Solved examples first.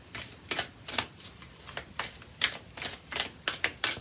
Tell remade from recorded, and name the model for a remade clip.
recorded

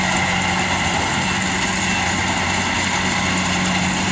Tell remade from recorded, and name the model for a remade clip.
recorded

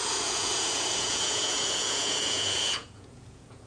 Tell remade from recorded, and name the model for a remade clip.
remade, vocoder, Vocos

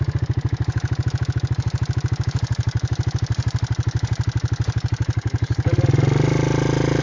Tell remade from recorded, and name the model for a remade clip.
recorded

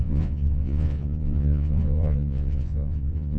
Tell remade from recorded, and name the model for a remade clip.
remade, vocoder, Vocos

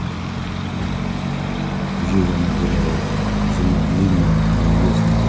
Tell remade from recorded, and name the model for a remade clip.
recorded